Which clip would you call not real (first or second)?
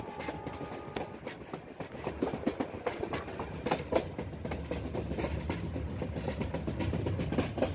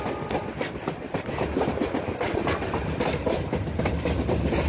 second